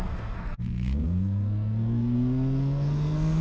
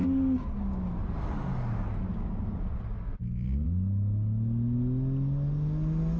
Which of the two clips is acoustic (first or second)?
second